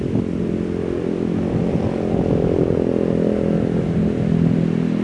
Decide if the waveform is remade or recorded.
recorded